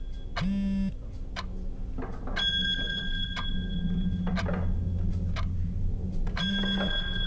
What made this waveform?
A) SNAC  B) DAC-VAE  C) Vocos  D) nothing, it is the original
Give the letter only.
D